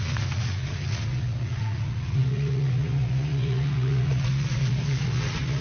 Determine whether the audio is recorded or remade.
remade